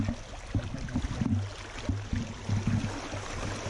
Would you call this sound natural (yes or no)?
yes